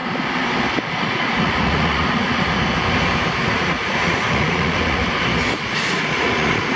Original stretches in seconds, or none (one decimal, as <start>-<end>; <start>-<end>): 0.0-0.9; 2.5-3.4; 5.0-5.6